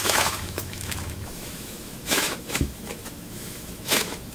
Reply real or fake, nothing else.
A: fake